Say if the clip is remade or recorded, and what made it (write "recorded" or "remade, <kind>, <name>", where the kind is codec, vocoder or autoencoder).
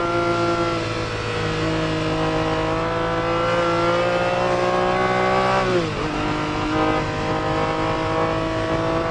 recorded